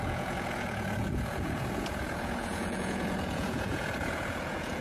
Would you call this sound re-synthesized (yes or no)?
yes